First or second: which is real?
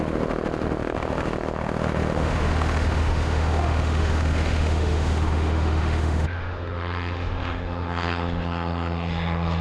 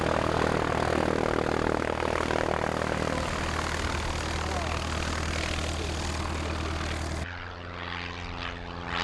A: second